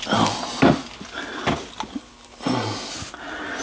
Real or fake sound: real